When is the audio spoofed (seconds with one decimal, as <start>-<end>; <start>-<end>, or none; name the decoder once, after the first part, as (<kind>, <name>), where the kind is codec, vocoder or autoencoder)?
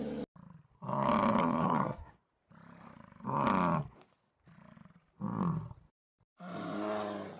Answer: 1.4-2.1 (codec, SNAC)